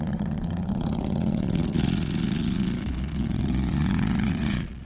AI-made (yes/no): yes